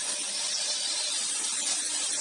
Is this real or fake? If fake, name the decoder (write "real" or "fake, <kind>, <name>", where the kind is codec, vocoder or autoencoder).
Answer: real